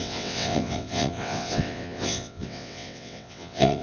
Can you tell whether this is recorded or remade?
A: remade